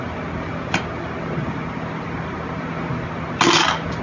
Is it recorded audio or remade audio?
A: recorded